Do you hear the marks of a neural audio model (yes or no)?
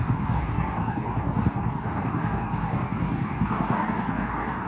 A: yes